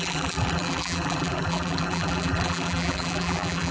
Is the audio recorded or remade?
remade